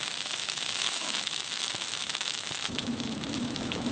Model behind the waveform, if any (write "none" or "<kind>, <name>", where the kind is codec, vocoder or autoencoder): autoencoder, DAC-VAE